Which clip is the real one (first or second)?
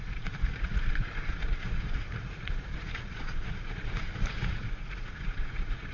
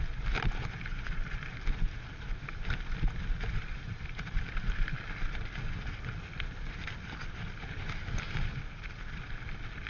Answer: second